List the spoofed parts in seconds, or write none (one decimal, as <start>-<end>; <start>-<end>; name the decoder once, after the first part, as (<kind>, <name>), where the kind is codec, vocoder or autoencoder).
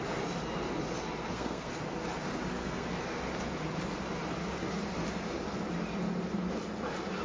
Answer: 1.2-1.7 (codec, SNAC); 2.6-3.2